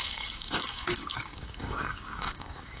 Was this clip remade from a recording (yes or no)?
yes